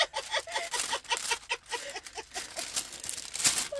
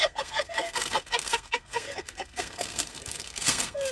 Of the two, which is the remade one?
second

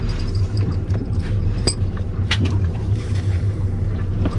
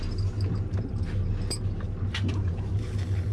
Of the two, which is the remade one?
first